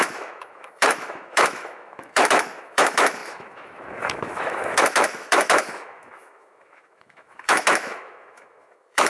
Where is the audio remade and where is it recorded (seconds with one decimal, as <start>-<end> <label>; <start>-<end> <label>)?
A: 0.0-9.1 remade